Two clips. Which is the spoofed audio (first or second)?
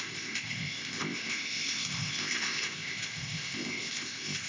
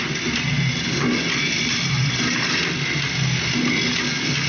first